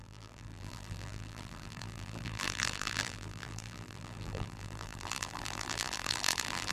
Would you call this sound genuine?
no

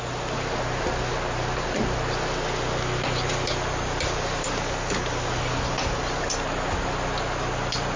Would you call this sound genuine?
yes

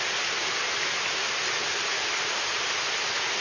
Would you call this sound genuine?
yes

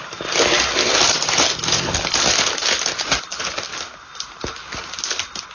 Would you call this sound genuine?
yes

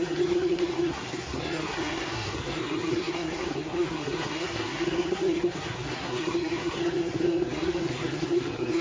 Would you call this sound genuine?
no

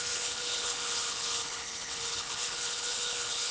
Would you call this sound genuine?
no